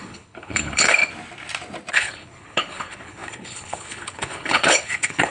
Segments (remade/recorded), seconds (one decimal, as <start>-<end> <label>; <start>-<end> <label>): 0.0-1.0 remade; 1.0-1.9 recorded; 1.9-5.3 remade